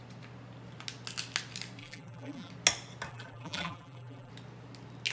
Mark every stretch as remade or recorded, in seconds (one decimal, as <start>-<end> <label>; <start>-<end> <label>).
0.0-1.8 recorded; 1.8-2.5 remade; 2.5-3.1 recorded; 3.1-4.3 remade; 4.3-5.1 recorded